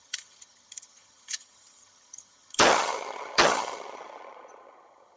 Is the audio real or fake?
fake